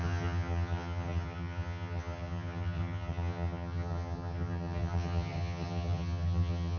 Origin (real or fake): fake